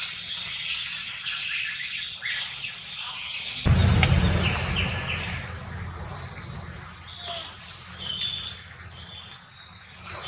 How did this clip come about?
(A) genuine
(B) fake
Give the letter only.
A